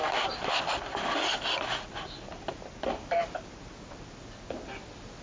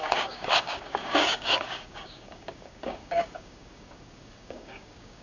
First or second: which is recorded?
first